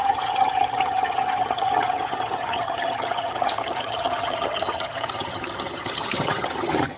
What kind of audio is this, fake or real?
fake